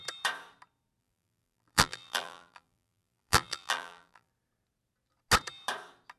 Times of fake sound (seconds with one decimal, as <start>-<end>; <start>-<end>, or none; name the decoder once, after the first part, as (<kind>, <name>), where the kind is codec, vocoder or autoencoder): 1.0-4.3 (vocoder, BigVGAN v2)